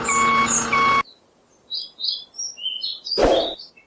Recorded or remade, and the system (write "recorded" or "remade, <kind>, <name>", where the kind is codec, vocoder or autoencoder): recorded